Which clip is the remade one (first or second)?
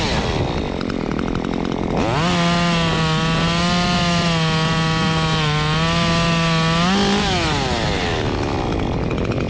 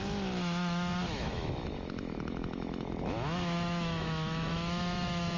second